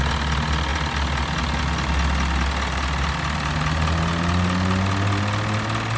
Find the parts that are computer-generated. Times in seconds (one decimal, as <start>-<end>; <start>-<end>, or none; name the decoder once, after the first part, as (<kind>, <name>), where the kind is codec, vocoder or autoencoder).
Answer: none

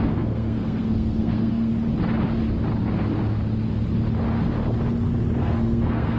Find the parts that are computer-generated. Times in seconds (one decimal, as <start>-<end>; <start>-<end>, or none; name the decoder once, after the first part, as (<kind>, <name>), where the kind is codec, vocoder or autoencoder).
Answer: 0.0-1.7 (codec, SNAC); 5.4-6.2

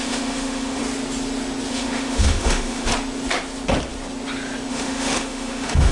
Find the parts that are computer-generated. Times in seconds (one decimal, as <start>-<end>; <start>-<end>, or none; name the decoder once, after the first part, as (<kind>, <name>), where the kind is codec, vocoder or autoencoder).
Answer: 0.0-0.8 (autoencoder, DAC-VAE); 1.7-2.9; 4.7-5.9

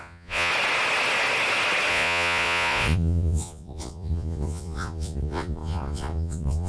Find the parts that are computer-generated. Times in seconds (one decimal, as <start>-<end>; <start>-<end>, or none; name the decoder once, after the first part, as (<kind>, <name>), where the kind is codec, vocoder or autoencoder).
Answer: 0.0-0.5 (vocoder, Vocos); 1.9-6.7

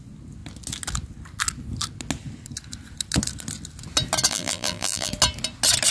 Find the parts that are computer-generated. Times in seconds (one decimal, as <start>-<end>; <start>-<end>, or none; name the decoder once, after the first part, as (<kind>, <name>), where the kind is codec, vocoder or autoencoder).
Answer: 4.3-5.1 (vocoder, BigVGAN v2)